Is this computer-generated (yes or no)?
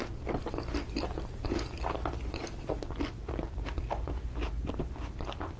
no